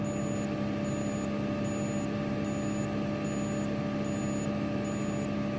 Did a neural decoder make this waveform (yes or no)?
no